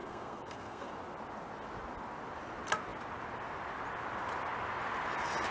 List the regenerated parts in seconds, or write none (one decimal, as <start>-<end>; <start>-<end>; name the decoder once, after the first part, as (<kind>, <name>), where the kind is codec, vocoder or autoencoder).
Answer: 0.0-0.9 (codec, SNAC)